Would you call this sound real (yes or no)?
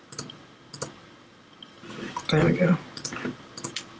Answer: yes